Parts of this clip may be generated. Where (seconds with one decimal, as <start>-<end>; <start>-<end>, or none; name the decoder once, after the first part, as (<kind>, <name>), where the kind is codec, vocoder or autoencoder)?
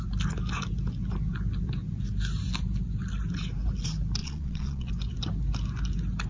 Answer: 4.2-4.9 (vocoder, Vocos)